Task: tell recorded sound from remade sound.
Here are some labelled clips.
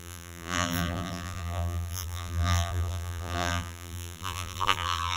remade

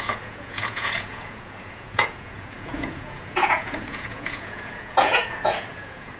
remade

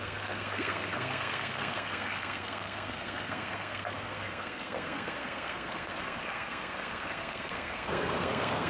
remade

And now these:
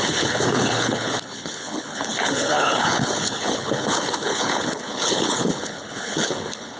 remade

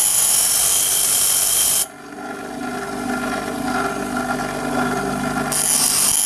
recorded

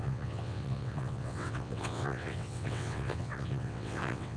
remade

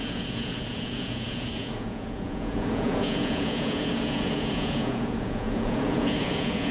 remade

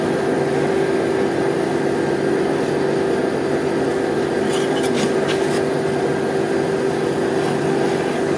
recorded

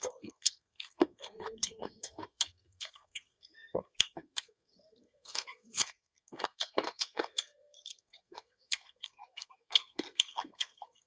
remade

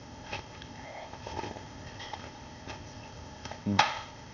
remade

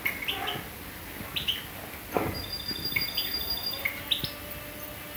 recorded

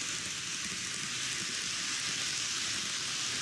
recorded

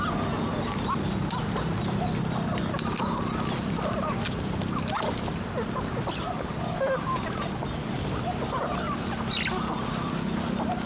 recorded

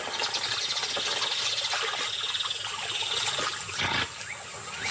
recorded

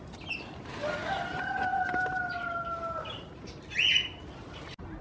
recorded